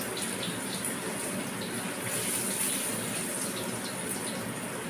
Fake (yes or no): no